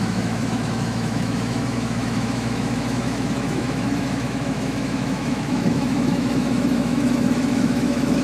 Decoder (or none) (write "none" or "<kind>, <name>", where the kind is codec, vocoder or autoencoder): autoencoder, DAC-VAE